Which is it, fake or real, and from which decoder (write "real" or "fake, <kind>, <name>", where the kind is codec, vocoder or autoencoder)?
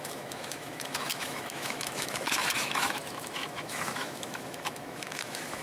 fake, autoencoder, DAC-VAE